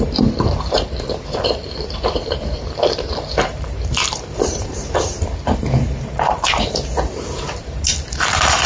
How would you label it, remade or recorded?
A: remade